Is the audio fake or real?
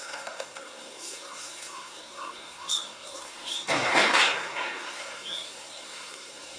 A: fake